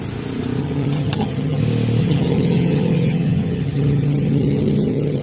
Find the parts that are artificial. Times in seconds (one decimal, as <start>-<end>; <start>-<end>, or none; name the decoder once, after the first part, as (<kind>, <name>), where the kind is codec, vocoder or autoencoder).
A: 0.6-1.6 (vocoder, HiFi-GAN); 2.0-5.2